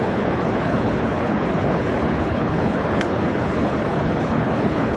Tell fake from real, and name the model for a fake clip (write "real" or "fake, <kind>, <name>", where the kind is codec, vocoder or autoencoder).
fake, codec, HILCodec